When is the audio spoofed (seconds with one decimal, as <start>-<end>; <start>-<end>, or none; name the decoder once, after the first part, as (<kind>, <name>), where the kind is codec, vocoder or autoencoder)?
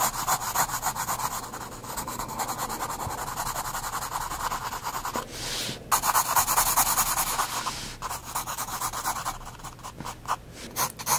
1.8-2.4 (codec, DAC); 8.2-8.8